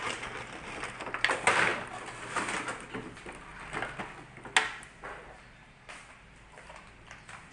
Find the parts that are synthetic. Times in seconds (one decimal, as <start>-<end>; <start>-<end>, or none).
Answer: none